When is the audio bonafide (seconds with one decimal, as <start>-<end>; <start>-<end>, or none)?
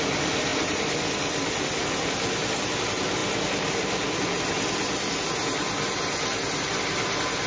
0.0-7.5